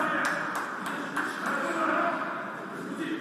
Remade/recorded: recorded